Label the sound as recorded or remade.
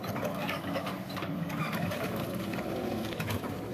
remade